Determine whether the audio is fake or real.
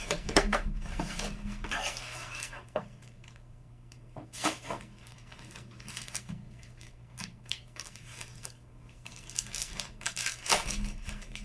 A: fake